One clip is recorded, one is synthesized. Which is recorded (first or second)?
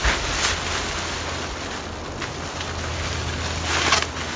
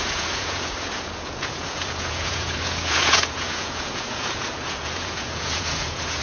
first